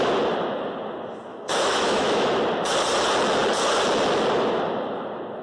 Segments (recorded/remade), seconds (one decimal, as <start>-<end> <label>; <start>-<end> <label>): 0.0-1.3 recorded; 1.3-2.3 remade; 2.3-5.4 recorded